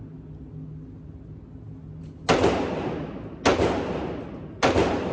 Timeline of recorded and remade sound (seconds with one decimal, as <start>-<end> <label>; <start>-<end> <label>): 0.0-5.1 recorded